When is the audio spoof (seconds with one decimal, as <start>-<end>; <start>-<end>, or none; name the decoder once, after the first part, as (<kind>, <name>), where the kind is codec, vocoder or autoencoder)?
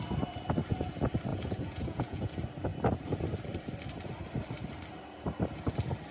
1.3-2.3 (vocoder, Vocos)